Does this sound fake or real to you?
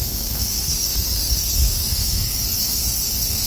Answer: fake